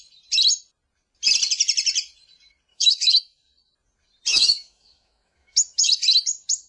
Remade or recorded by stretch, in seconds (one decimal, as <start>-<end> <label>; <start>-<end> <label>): 0.0-2.7 recorded; 2.7-3.2 remade; 3.2-4.3 recorded; 4.3-5.9 remade; 5.9-6.7 recorded